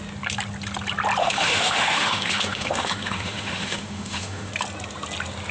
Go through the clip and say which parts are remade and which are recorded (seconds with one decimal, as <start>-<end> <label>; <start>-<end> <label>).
0.0-1.2 recorded; 1.2-4.5 remade; 4.5-5.5 recorded